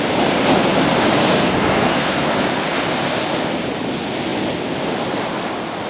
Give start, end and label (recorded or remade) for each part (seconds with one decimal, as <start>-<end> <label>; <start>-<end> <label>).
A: 0.0-1.2 recorded; 1.2-2.3 remade; 2.3-5.9 recorded